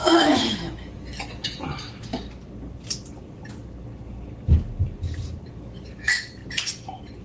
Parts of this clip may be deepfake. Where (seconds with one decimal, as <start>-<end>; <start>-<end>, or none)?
0.0-2.1; 5.5-6.4